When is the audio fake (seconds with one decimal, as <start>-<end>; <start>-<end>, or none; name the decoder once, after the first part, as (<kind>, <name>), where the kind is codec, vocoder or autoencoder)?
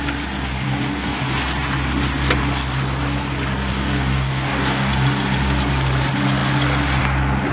0.5-1.2 (codec, DAC); 3.7-4.9